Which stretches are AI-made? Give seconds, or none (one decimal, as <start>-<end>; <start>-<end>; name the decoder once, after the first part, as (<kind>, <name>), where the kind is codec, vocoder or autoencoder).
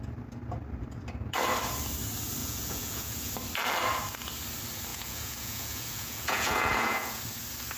2.4-3.3 (vocoder, Vocos); 4.9-7.2